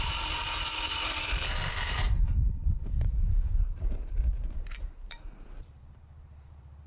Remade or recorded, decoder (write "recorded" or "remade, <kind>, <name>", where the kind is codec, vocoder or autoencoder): remade, vocoder, BigVGAN v2